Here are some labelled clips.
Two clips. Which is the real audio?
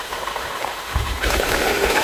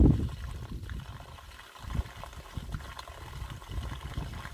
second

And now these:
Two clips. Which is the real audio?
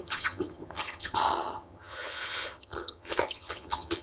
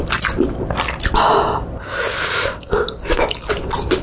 second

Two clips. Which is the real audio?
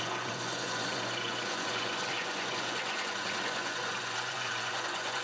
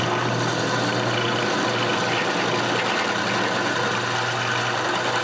second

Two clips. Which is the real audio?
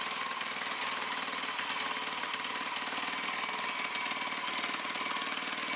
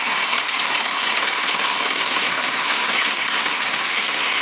first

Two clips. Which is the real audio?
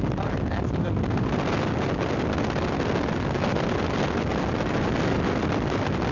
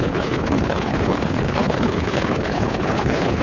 first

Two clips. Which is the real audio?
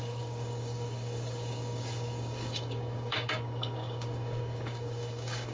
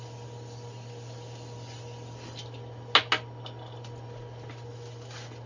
second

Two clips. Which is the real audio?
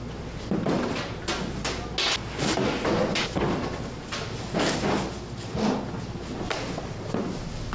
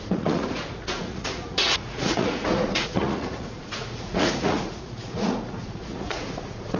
first